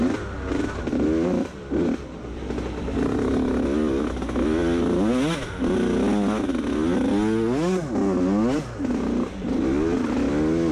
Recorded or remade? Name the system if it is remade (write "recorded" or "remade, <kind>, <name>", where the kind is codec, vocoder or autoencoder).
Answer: recorded